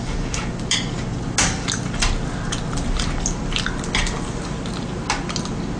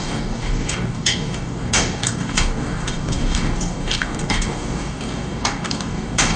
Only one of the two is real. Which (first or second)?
first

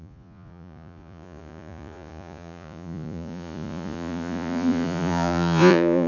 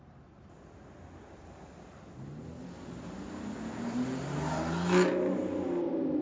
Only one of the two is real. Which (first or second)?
second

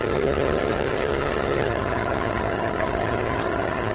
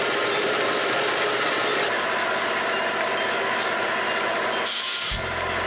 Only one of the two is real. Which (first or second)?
second